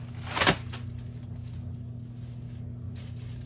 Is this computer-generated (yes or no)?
no